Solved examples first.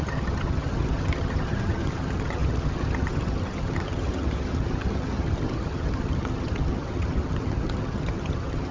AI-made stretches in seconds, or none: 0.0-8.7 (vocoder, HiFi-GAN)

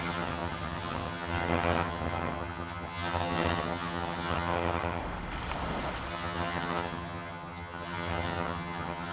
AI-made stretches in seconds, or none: 0.0-5.0 (vocoder, HiFi-GAN); 6.1-9.1

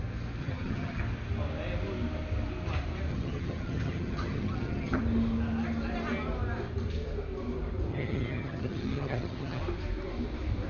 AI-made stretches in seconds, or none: 0.4-1.0 (vocoder, HiFi-GAN); 3.1-5.0; 7.9-9.6

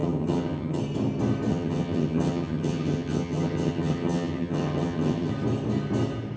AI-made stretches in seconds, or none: 0.0-0.8 (vocoder, HiFi-GAN); 1.5-5.3

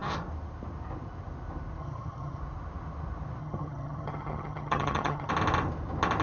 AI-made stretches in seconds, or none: 1.8-2.4 (vocoder, HiFi-GAN); 3.4-5.3

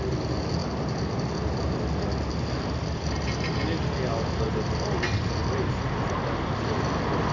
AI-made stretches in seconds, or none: none